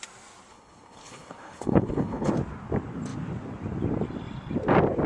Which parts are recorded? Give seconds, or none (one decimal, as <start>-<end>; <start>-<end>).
0.0-0.5; 2.3-5.1